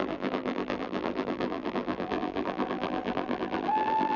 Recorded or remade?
remade